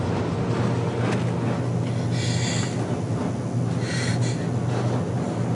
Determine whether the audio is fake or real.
real